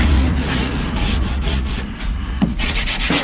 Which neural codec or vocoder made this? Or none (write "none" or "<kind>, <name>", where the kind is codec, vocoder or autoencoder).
vocoder, Vocos